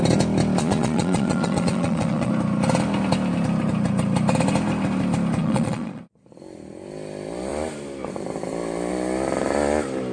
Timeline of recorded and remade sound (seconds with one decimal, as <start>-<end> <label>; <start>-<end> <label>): 0.0-0.6 recorded; 0.6-2.3 remade; 2.3-5.4 recorded; 5.4-6.0 remade; 6.0-10.1 recorded